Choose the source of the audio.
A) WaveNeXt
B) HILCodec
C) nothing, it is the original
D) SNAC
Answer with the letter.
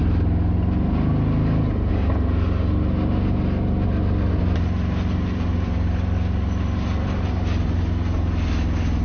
C